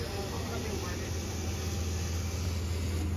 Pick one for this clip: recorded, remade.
recorded